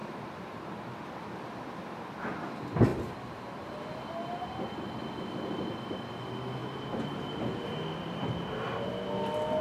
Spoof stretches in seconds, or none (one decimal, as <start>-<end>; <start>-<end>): 0.0-0.7; 2.9-3.8; 6.6-8.7